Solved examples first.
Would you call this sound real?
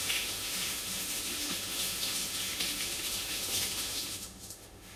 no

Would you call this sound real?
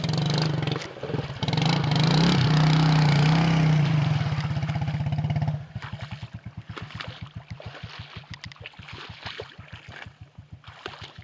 yes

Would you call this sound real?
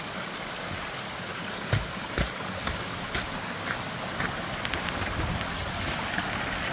yes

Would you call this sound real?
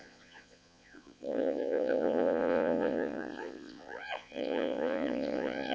no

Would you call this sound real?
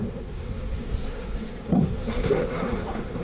no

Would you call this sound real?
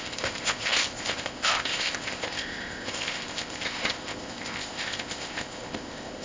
no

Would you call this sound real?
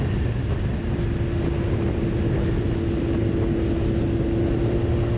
yes